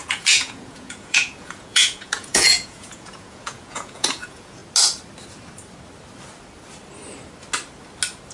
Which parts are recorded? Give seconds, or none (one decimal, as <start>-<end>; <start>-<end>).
4.6-8.3